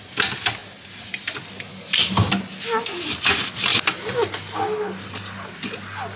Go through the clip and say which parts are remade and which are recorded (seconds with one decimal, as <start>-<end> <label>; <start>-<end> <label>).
0.0-6.2 recorded